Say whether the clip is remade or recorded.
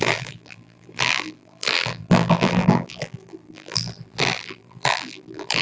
remade